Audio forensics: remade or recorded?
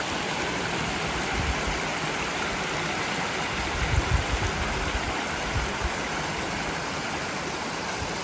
recorded